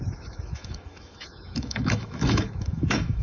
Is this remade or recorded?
remade